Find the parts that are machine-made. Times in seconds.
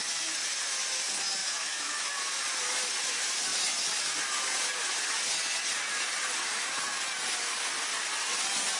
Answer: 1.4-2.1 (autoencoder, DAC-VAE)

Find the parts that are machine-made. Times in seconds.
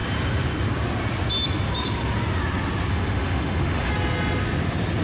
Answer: 2.9-3.9 (autoencoder, DAC-VAE)